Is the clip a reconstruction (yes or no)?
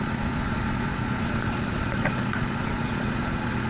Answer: yes